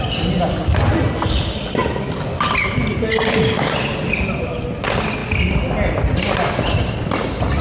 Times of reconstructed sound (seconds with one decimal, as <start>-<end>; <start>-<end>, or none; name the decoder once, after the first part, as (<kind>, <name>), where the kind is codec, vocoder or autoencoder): none